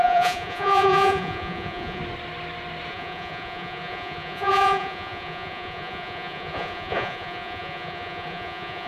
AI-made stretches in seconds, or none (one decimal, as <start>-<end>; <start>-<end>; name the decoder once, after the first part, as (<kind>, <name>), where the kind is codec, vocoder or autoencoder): 0.0-2.0 (vocoder, Vocos); 2.9-8.9